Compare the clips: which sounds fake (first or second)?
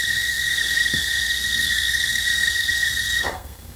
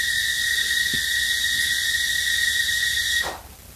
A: first